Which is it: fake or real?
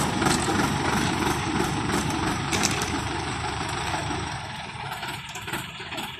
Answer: fake